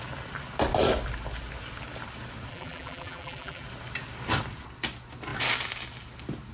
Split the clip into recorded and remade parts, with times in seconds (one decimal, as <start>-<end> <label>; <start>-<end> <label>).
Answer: 0.0-2.5 recorded; 2.5-3.6 remade; 3.6-6.5 recorded